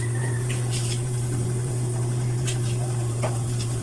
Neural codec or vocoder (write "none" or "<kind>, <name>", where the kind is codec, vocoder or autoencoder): vocoder, BigVGAN v2